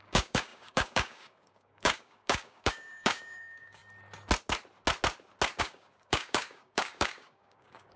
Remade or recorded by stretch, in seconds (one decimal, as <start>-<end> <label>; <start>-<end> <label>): 0.0-3.8 remade; 3.8-5.6 recorded; 5.6-8.0 remade